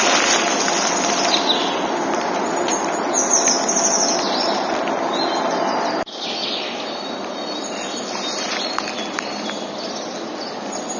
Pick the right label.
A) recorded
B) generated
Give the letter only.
A